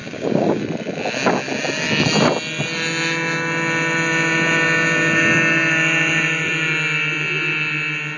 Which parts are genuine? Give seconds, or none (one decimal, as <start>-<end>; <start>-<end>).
0.6-8.2